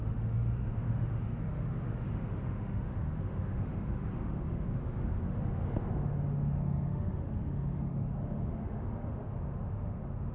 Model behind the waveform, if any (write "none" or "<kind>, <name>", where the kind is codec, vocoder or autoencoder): autoencoder, DAC-VAE